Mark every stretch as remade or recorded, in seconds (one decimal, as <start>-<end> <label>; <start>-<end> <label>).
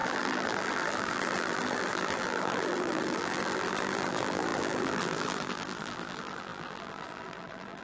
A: 0.0-7.8 remade